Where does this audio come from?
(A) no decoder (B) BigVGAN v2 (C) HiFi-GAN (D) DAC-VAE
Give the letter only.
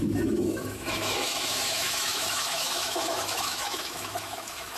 D